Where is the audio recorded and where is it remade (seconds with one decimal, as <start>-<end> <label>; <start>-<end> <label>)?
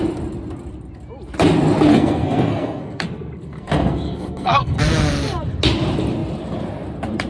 0.0-1.9 recorded; 1.9-4.8 remade; 4.8-7.3 recorded